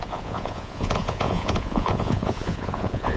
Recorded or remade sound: remade